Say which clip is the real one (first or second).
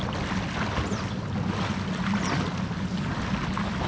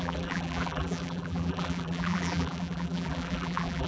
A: first